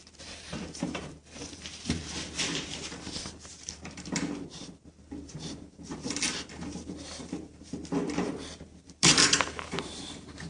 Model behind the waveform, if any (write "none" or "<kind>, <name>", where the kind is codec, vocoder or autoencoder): vocoder, BigVGAN v2